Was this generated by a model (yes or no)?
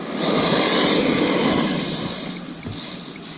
no